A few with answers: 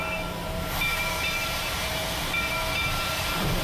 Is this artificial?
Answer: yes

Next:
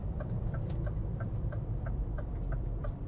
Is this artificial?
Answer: yes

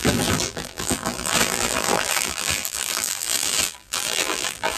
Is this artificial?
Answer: yes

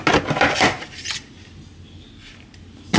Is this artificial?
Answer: no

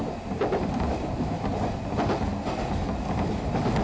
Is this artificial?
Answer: no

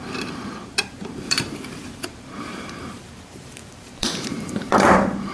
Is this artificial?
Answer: yes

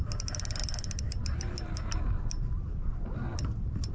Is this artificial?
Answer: no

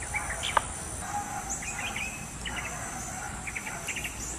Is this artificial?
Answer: no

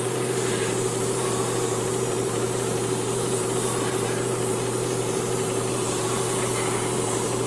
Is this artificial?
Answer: yes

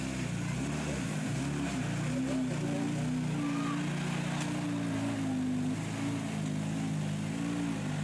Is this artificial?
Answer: no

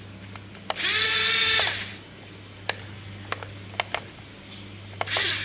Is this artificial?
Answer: no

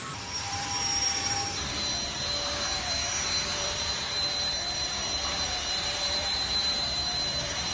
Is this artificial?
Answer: yes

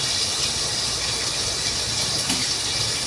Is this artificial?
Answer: no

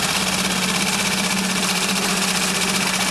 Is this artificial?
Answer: no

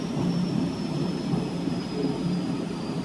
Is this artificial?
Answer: yes